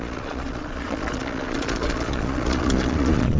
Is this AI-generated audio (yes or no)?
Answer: yes